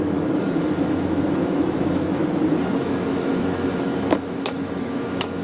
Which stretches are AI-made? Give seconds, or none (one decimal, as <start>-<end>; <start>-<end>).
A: 0.0-2.2; 2.8-5.4